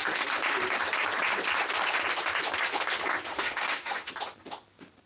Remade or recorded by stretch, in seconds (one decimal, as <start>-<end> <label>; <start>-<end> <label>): 0.0-3.3 recorded; 3.3-4.1 remade; 4.1-5.1 recorded